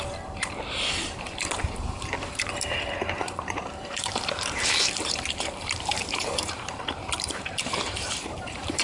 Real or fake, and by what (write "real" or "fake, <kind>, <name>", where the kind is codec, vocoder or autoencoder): fake, vocoder, BigVGAN v2